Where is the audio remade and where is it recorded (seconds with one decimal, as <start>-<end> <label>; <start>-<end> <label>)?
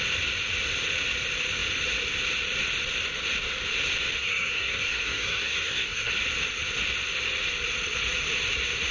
0.0-4.2 recorded; 4.2-6.1 remade; 6.1-8.9 recorded